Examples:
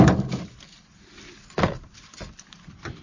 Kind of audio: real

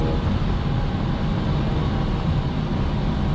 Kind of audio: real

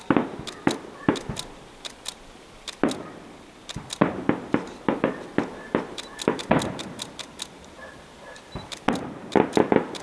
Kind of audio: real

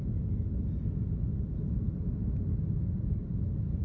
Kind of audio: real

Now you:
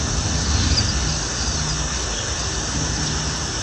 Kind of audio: real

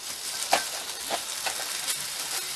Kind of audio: real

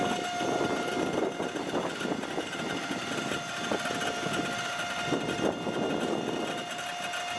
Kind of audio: real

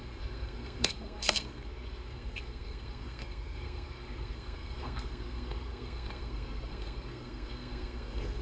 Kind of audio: fake